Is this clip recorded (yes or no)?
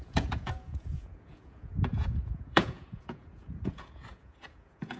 no